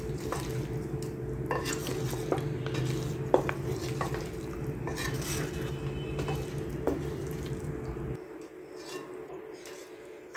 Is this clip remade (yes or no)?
no